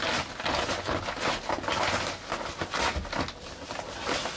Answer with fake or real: real